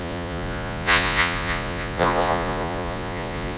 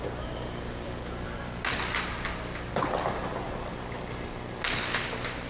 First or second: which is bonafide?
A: second